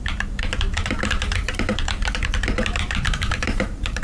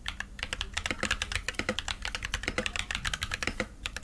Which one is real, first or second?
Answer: second